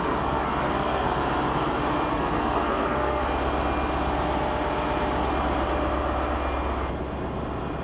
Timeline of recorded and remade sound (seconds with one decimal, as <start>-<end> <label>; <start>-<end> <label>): 0.0-1.2 remade; 1.2-2.1 recorded; 2.1-3.2 remade; 3.2-7.8 recorded